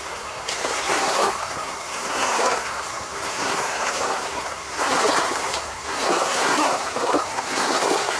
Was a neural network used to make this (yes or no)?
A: yes